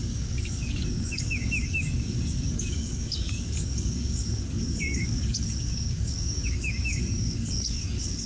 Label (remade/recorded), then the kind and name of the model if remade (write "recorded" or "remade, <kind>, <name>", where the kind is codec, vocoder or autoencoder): remade, codec, DAC